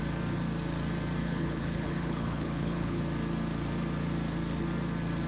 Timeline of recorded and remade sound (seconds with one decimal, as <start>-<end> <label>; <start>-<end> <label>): 0.0-1.2 recorded; 1.2-3.0 remade; 3.0-5.3 recorded

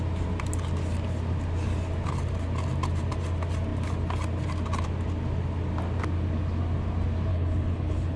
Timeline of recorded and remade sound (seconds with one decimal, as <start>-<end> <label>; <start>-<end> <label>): 0.0-7.3 recorded; 7.3-8.2 remade

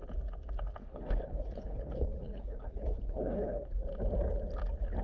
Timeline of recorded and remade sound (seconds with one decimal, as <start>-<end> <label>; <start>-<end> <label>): 0.0-0.8 recorded; 0.8-3.8 remade; 3.8-5.0 recorded

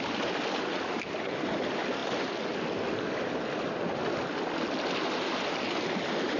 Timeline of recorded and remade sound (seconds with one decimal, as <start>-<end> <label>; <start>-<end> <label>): 0.0-6.4 recorded

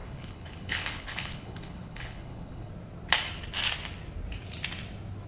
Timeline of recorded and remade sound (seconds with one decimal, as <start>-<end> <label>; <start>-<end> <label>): 0.0-2.7 remade; 2.7-5.3 recorded

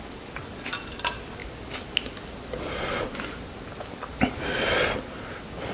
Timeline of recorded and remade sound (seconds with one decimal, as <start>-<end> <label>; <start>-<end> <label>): 0.0-5.7 recorded